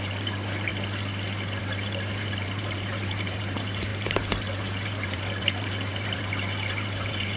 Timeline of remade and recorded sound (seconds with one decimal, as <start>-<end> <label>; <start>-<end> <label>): 0.0-0.7 remade; 0.7-1.6 recorded; 1.6-7.4 remade